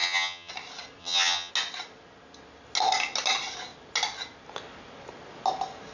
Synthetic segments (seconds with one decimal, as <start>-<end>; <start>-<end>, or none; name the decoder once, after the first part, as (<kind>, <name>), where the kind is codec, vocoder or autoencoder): 0.0-0.5 (vocoder, HiFi-GAN); 1.0-1.5